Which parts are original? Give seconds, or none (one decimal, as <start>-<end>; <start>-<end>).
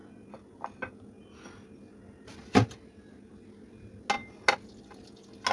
0.0-5.5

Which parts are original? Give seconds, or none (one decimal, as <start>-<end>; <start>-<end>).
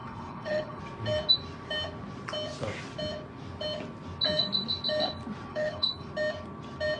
0.8-5.5; 6.1-7.0